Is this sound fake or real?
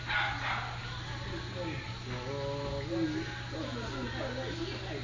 real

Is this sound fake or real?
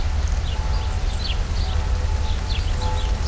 real